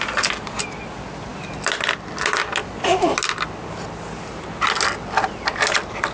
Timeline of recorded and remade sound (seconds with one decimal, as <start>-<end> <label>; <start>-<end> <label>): 0.0-6.1 recorded